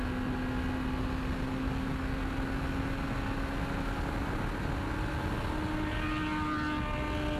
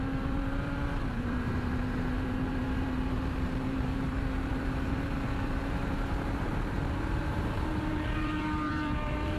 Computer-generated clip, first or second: second